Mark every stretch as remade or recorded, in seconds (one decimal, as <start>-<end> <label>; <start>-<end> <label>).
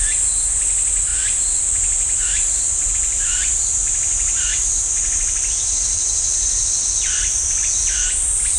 0.0-8.6 recorded